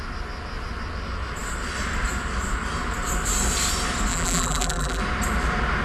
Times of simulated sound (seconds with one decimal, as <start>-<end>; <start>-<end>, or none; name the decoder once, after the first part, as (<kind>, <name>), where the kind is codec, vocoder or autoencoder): 4.1-5.0 (vocoder, BigVGAN v2)

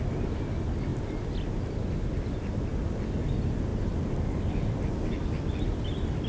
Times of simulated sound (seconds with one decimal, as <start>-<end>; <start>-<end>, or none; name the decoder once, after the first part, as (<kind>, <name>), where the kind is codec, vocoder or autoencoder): none

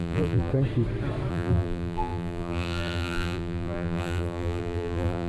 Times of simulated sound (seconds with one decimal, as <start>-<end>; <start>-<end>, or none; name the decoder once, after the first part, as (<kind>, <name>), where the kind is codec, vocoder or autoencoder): 0.0-0.5 (vocoder, BigVGAN v2); 1.3-5.3

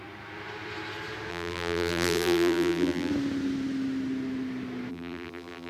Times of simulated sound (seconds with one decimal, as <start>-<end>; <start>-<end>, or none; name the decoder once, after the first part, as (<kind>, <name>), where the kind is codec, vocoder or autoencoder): 1.3-3.1 (vocoder, BigVGAN v2); 4.9-5.7

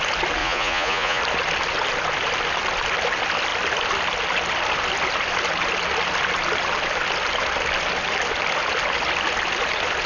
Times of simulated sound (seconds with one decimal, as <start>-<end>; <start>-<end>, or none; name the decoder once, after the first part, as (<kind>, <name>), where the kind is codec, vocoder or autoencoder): 0.4-1.2 (vocoder, Vocos)

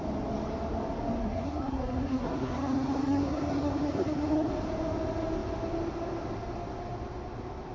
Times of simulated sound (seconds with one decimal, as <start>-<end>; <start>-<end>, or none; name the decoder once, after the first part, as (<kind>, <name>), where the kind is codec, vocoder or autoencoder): 1.2-4.5 (codec, SNAC)

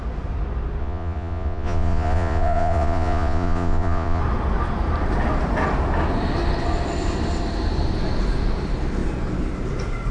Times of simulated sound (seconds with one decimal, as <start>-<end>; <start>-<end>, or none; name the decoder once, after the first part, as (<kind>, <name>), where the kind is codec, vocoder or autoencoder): 0.8-4.2 (vocoder, Vocos)

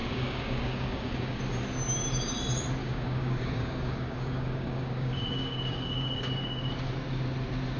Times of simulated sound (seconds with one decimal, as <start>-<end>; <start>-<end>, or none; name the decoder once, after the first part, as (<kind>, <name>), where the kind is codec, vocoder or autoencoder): 0.0-1.4 (codec, DAC); 2.8-6.7